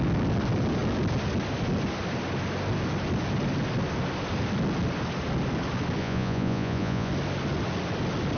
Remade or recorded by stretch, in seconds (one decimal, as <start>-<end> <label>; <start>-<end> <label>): 0.0-6.0 recorded; 6.0-7.1 remade; 7.1-8.4 recorded